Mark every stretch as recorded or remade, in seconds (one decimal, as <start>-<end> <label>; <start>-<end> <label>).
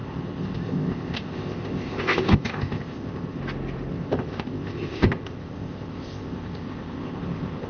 0.0-3.4 remade; 3.4-3.9 recorded; 3.9-7.7 remade